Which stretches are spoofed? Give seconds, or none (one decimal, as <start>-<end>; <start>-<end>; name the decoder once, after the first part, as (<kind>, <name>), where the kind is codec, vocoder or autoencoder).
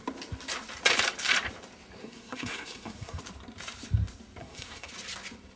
2.0-3.2 (codec, SNAC); 4.4-4.9